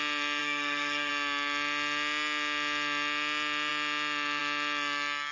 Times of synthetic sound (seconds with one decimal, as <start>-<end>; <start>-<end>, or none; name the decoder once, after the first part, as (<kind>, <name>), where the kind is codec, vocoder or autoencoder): 0.4-1.1 (codec, SNAC)